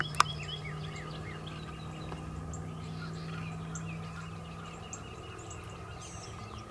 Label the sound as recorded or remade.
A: recorded